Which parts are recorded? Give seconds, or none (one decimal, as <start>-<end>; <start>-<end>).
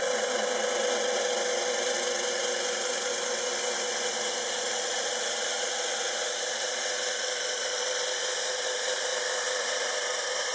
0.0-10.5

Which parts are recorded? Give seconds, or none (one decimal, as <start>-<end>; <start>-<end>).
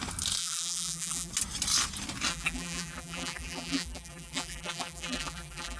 0.0-0.4; 1.3-2.3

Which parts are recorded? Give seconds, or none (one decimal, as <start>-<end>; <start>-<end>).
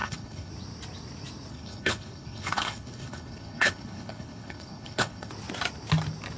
0.5-1.5; 5.3-6.4